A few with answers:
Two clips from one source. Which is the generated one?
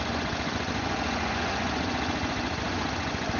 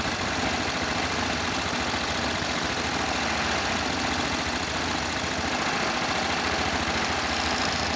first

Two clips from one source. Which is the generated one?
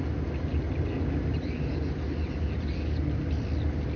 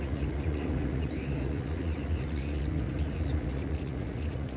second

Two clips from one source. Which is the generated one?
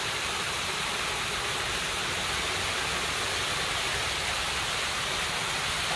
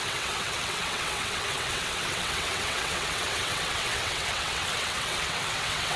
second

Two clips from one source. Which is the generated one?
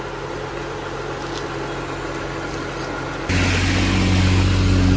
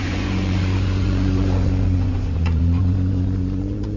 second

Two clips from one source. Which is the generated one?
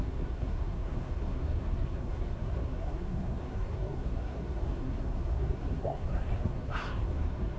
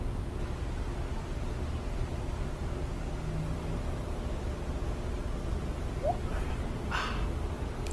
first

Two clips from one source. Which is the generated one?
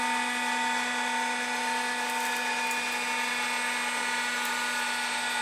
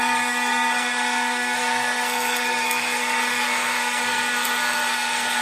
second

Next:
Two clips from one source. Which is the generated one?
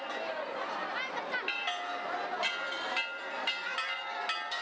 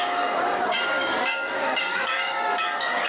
second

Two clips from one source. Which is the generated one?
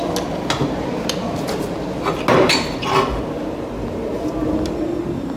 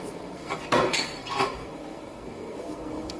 second